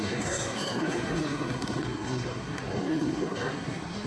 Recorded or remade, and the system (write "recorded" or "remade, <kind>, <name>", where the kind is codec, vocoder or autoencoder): remade, codec, SNAC